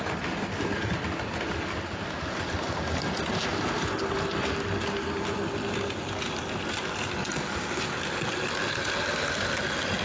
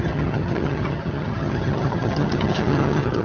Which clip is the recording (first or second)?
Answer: first